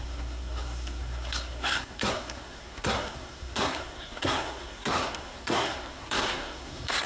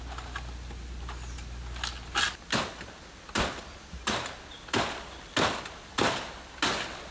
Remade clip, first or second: first